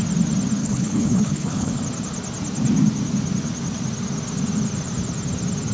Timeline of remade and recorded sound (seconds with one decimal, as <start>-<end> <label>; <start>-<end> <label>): 0.0-0.6 recorded; 0.6-1.8 remade; 1.8-5.7 recorded